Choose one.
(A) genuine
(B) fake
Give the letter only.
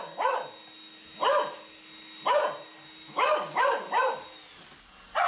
A